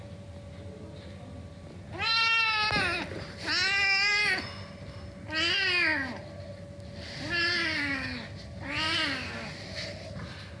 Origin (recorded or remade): recorded